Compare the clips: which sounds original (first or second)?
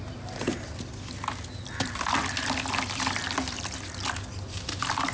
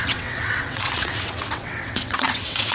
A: first